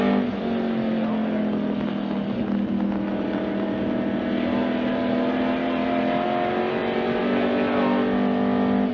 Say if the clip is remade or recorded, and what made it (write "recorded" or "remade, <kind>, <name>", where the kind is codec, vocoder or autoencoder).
recorded